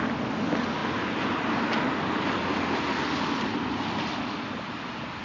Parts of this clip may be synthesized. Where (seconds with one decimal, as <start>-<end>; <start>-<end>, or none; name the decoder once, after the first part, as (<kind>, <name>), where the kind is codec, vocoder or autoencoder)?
none

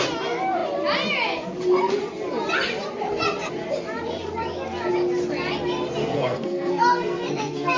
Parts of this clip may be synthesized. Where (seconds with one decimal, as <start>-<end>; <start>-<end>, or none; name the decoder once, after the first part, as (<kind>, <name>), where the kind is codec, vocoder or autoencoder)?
6.0-7.8 (codec, SNAC)

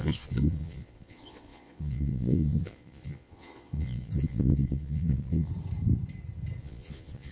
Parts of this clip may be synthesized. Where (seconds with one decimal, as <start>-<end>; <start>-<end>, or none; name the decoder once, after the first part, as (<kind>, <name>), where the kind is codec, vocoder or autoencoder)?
0.0-5.5 (vocoder, Vocos); 6.6-7.3

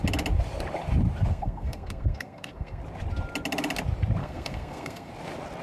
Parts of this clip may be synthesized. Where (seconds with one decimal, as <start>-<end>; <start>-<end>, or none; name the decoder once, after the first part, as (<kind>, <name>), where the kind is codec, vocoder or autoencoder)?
1.3-2.8 (codec, SNAC); 4.2-5.1

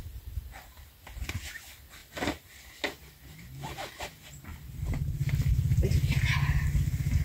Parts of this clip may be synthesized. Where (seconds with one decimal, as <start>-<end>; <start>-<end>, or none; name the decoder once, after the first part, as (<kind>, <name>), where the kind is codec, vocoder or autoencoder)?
none

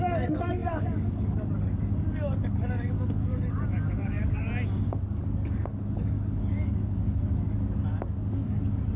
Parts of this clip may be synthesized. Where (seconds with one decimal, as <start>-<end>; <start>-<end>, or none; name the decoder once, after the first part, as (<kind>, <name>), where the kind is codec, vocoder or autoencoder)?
0.0-4.5 (codec, DAC); 5.0-9.0